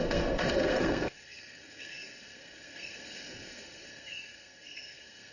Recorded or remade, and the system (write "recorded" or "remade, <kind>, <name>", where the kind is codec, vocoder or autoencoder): remade, codec, SNAC